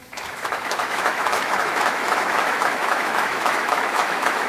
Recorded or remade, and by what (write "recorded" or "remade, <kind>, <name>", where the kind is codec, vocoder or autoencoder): remade, autoencoder, DAC-VAE